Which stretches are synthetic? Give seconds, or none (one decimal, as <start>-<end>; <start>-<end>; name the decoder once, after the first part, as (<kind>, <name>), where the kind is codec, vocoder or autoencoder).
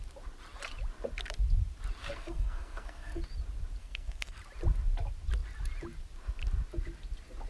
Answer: 2.0-3.2 (codec, SNAC); 3.8-4.4